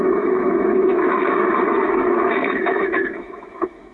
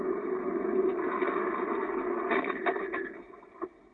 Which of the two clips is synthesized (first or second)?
first